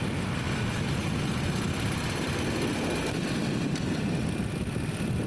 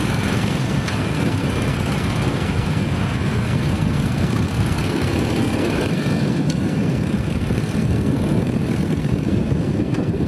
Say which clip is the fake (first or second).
second